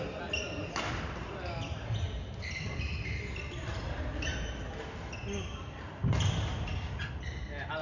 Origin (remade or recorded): recorded